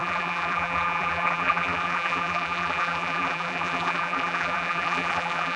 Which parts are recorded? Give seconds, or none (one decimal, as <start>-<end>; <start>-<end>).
none